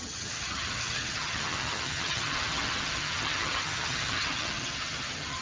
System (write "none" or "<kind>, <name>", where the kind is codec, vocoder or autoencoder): vocoder, HiFi-GAN